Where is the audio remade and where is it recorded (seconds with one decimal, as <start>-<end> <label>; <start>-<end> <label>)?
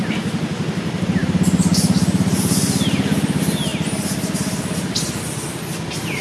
0.0-1.2 recorded; 1.2-2.8 remade; 2.8-6.2 recorded